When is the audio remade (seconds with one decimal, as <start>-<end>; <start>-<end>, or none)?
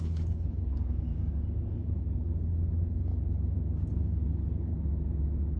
0.0-1.1; 1.7-3.1; 3.9-4.7